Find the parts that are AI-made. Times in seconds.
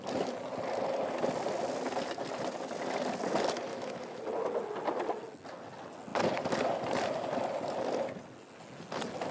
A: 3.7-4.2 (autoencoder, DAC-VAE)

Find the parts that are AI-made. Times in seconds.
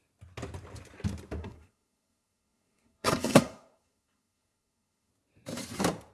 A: 1.4-5.1 (codec, SNAC)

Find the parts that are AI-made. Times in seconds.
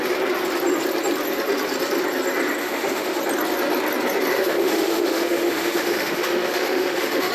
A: 2.6-3.2 (autoencoder, DAC-VAE); 4.3-7.3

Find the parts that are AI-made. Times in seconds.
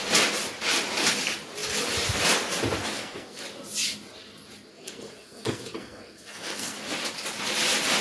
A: 2.8-3.4 (codec, SNAC); 4.7-6.8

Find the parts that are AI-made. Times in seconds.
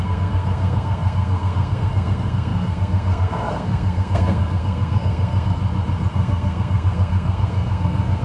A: 0.0-5.6 (codec, SNAC); 6.1-8.2